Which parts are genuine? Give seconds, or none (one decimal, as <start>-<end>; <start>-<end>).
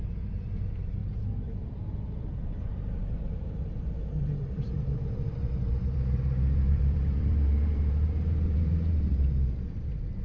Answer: none